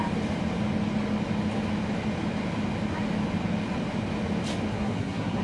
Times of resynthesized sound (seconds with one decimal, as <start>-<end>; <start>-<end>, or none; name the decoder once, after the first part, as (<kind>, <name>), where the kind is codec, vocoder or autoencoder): 4.7-5.4 (codec, SNAC)